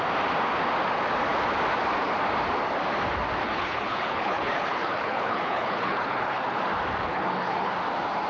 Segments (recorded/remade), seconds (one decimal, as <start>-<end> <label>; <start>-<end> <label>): 0.0-3.4 recorded; 3.4-6.6 remade; 6.6-7.1 recorded; 7.1-7.7 remade; 7.7-8.3 recorded